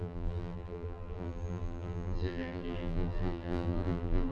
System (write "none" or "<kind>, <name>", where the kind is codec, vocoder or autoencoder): vocoder, BigVGAN v2